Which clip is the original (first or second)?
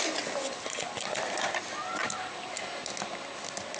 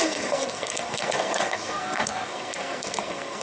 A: first